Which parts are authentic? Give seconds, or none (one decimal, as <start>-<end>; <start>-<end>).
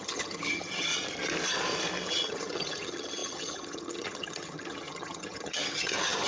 0.9-2.1